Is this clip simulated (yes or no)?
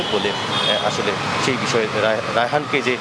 no